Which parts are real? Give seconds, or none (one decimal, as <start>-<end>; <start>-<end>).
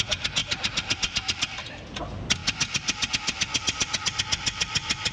0.0-5.1